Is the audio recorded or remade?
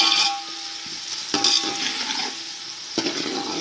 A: recorded